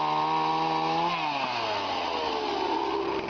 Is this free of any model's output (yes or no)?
yes